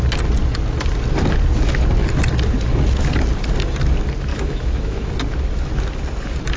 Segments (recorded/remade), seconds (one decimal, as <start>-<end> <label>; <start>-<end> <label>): 0.0-4.3 recorded; 4.3-5.1 remade; 5.1-6.6 recorded